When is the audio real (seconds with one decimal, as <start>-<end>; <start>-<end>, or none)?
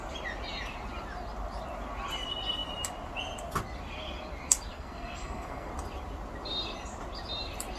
0.0-4.7; 5.7-7.8